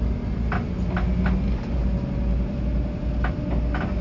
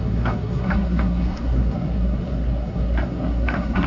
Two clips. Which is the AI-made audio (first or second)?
second